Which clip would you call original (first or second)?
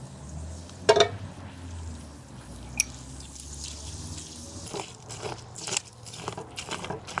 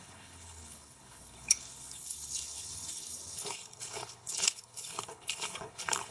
first